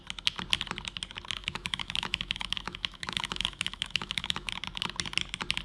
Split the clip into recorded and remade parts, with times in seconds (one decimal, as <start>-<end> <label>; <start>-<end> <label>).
0.0-1.4 recorded; 1.4-4.5 remade; 4.5-5.6 recorded